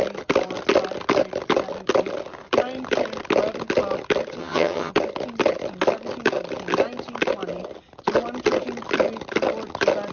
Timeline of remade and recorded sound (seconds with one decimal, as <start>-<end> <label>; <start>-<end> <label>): 0.0-4.4 recorded; 4.4-4.9 remade; 4.9-10.1 recorded